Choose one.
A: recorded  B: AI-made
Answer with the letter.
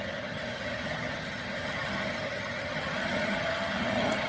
B